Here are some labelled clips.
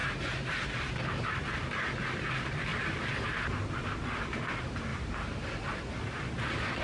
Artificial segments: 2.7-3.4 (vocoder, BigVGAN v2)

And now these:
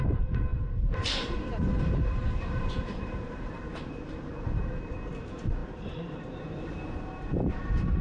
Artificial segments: 0.0-4.6 (vocoder, BigVGAN v2); 5.1-8.0